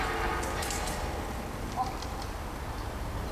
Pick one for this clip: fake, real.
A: real